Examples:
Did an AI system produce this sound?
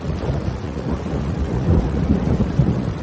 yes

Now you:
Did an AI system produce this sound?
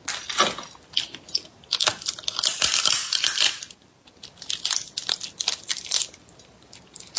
no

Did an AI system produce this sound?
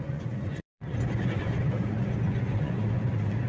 yes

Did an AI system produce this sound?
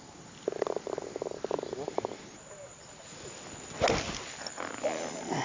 no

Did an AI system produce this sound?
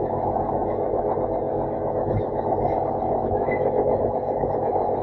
yes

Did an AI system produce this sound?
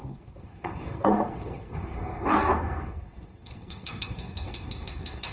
yes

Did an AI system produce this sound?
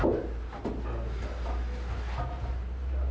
no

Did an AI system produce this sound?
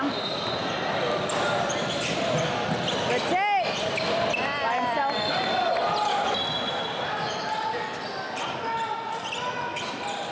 no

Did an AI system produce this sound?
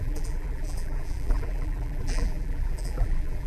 yes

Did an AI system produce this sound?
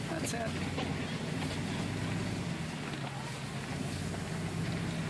no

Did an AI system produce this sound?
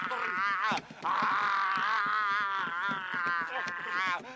no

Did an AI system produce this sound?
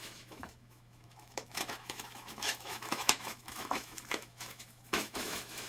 yes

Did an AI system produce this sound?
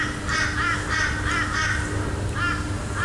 no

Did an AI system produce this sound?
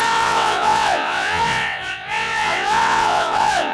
yes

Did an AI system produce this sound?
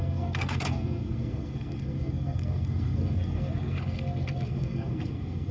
yes